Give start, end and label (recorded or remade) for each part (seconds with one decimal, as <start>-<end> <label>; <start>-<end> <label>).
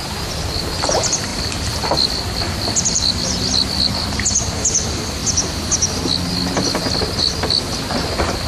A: 0.0-5.2 remade; 5.2-8.5 recorded